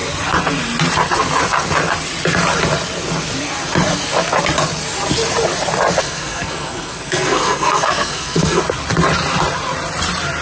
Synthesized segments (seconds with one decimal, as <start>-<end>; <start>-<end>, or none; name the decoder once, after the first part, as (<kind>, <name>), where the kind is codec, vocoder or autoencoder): 6.0-8.6 (codec, SNAC)